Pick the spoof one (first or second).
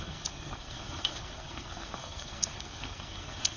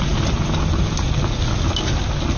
first